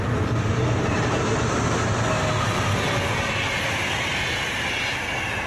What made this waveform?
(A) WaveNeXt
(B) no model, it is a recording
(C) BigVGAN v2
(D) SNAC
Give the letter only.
B